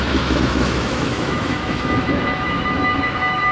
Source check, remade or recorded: remade